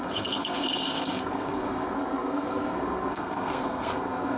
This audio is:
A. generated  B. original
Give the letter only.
A